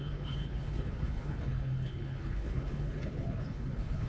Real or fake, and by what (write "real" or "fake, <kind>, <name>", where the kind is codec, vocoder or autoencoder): fake, codec, HILCodec